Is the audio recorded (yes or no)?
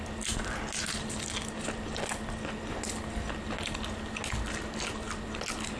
yes